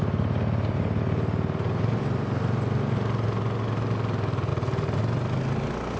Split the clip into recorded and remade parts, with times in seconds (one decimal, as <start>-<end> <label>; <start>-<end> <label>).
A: 0.0-6.0 recorded